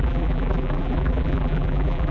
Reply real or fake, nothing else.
fake